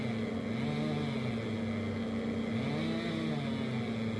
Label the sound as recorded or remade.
recorded